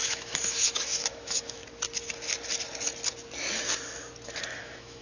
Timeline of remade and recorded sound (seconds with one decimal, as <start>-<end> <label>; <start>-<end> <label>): 0.0-1.6 remade; 1.6-4.6 recorded; 4.6-5.0 remade

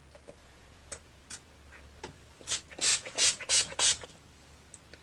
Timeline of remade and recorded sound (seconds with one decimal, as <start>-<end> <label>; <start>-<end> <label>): 0.0-0.4 recorded; 0.4-1.5 remade; 1.5-2.9 recorded; 2.9-4.1 remade; 4.1-5.0 recorded

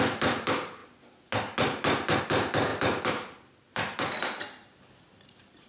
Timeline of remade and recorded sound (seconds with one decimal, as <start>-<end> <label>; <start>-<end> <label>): 0.0-0.8 remade; 0.8-2.2 recorded; 2.2-5.7 remade

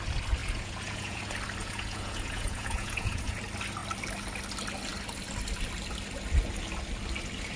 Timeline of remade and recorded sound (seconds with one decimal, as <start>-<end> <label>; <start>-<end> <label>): 0.0-0.4 recorded; 0.4-1.2 remade; 1.2-1.6 recorded; 1.6-3.4 remade; 3.4-7.6 recorded

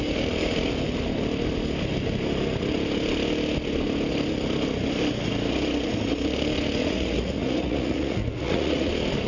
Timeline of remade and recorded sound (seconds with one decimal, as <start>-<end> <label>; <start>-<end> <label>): 0.0-6.8 recorded; 6.8-8.9 remade; 8.9-9.3 recorded

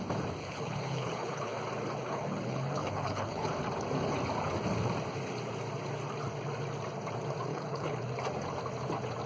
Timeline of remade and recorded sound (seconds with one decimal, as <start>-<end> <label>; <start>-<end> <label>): 0.0-0.4 recorded; 0.4-1.6 remade; 1.6-2.0 recorded; 2.0-3.5 remade; 3.5-7.5 recorded; 7.5-8.1 remade; 8.1-9.3 recorded

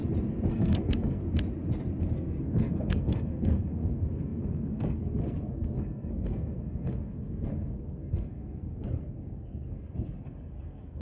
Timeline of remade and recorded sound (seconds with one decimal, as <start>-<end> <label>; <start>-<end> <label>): 0.0-0.5 recorded; 0.5-1.2 remade; 1.2-2.1 recorded; 2.1-11.0 remade

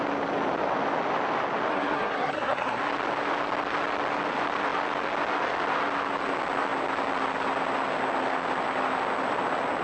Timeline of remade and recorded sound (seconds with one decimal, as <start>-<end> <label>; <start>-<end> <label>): 0.0-1.7 recorded; 1.7-2.8 remade; 2.8-9.8 recorded